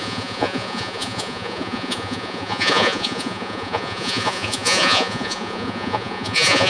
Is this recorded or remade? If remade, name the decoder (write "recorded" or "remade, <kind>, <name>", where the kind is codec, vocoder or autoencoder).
remade, vocoder, Vocos